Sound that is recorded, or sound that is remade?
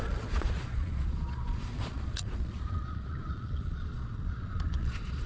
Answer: remade